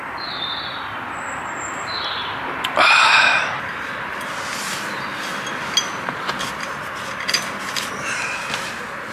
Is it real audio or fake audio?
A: real